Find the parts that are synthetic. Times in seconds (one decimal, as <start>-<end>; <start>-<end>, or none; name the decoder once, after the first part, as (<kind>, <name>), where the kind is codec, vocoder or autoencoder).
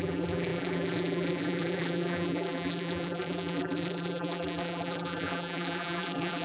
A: 0.0-6.4 (vocoder, BigVGAN v2)